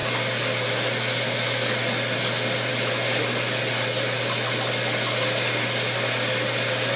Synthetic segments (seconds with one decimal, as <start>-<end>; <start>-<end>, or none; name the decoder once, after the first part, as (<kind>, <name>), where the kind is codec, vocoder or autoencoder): none